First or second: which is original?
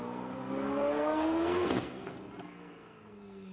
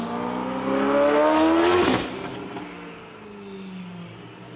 second